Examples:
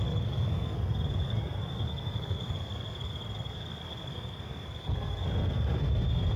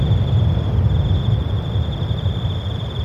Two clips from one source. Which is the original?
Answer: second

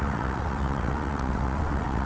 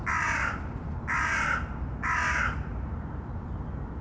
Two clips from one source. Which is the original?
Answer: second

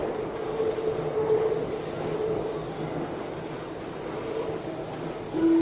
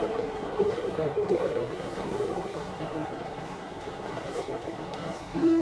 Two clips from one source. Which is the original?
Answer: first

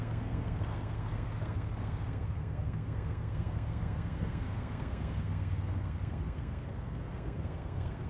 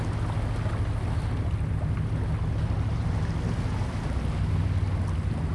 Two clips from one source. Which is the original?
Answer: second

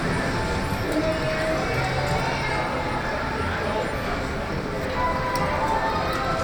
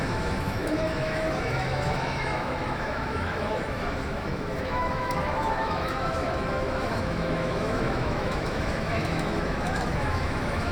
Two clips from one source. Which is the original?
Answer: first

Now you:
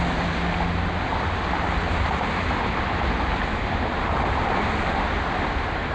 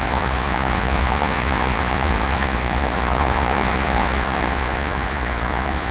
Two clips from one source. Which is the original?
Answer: first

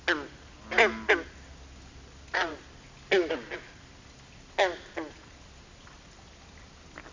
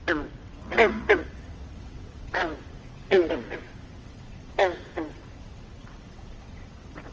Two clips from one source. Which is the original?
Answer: first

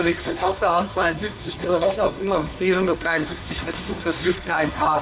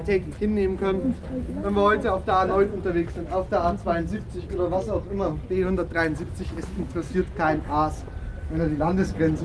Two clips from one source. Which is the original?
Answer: second